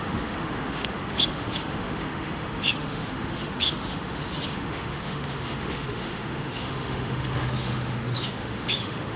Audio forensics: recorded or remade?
remade